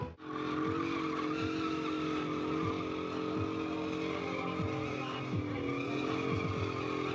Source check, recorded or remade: recorded